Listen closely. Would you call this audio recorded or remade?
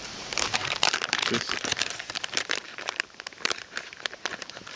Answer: remade